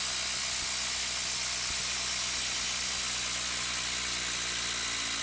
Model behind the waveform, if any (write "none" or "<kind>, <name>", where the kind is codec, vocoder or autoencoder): none